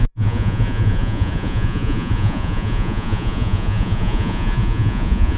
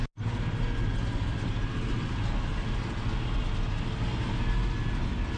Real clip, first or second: second